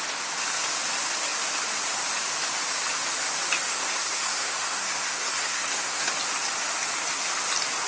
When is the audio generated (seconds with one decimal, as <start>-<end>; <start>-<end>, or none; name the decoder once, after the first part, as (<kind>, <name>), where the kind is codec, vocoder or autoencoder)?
3.7-6.1 (codec, SNAC)